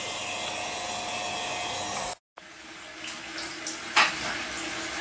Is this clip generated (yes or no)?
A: no